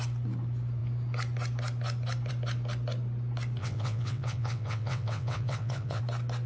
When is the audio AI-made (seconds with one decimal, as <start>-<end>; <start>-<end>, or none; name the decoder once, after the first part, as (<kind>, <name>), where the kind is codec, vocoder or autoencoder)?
3.6-6.0 (vocoder, WaveNeXt)